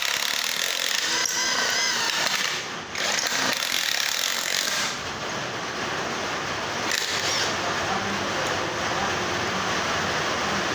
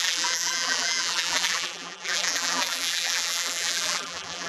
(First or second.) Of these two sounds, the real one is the first